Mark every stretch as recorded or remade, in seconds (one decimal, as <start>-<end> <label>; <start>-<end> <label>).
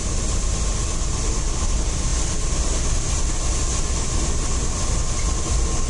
0.0-5.9 recorded